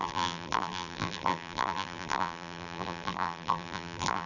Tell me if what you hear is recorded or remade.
remade